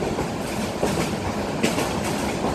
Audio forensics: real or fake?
real